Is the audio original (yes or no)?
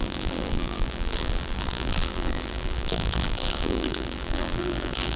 no